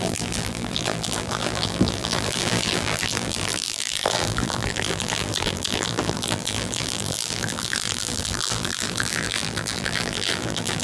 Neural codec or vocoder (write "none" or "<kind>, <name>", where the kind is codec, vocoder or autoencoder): vocoder, BigVGAN v2